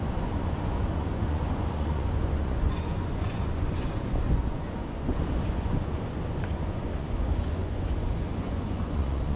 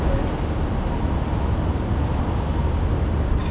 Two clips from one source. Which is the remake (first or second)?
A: first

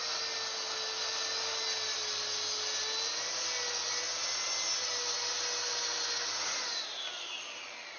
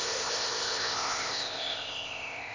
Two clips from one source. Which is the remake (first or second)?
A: second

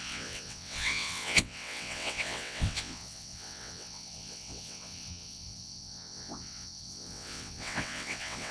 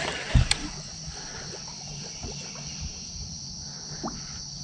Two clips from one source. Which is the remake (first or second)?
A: first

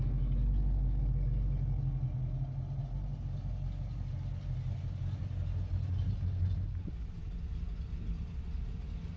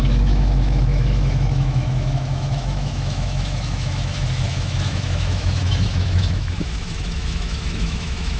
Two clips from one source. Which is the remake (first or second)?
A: second